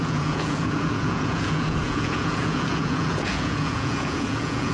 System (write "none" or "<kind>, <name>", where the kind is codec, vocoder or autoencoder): vocoder, Vocos